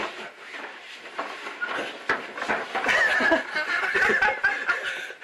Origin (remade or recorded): recorded